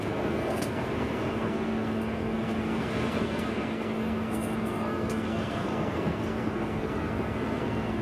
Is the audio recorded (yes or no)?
no